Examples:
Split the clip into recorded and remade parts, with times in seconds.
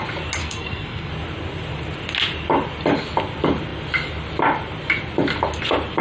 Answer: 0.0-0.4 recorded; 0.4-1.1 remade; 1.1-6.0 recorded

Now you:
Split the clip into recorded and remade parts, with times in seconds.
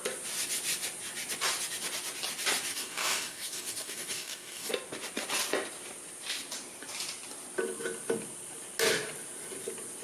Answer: 0.0-2.7 recorded; 2.7-4.7 remade; 4.7-10.0 recorded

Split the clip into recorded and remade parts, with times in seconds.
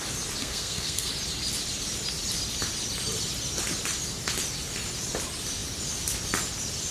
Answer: 0.0-0.4 recorded; 0.4-1.1 remade; 1.1-6.9 recorded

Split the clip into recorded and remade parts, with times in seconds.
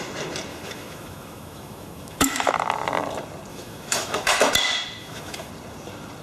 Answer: 0.0-0.5 recorded; 0.5-2.5 remade; 2.5-3.5 recorded; 3.5-4.5 remade; 4.5-5.0 recorded; 5.0-5.5 remade; 5.5-6.2 recorded